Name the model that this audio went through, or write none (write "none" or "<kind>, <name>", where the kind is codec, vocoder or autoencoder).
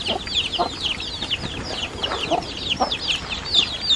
none